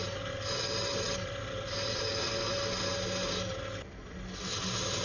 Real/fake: real